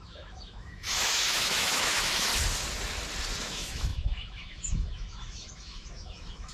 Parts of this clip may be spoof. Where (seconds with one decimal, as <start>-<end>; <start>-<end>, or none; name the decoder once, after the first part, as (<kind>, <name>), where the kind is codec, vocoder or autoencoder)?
0.0-2.3 (autoencoder, DAC-VAE); 3.4-6.5